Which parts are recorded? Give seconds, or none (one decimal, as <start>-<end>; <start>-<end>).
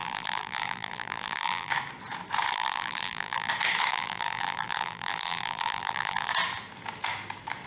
1.7-2.5; 3.5-3.9; 6.3-7.7